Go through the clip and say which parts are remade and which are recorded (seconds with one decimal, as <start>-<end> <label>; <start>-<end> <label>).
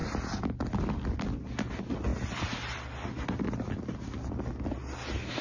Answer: 0.0-2.1 recorded; 2.1-4.3 remade; 4.3-5.4 recorded